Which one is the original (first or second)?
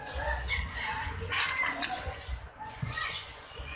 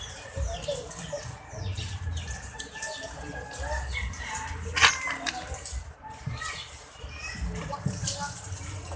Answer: second